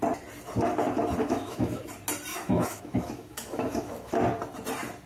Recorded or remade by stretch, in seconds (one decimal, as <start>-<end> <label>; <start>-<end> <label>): 0.0-1.2 recorded; 1.2-1.8 remade; 1.8-2.3 recorded; 2.3-4.1 remade; 4.1-5.1 recorded